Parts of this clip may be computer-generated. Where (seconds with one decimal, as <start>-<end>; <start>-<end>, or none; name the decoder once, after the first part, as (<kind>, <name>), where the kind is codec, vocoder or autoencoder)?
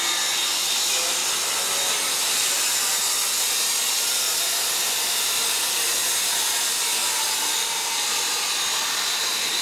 none